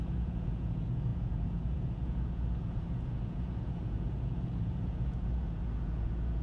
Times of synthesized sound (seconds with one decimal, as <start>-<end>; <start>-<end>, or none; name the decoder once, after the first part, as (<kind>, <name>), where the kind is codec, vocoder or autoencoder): 0.0-6.4 (vocoder, Vocos)